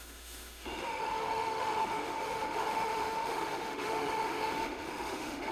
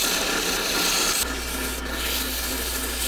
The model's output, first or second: first